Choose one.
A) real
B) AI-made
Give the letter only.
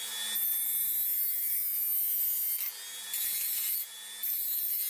A